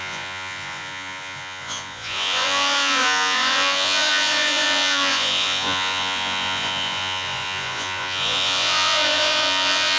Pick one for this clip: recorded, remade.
remade